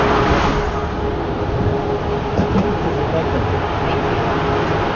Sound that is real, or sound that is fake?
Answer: real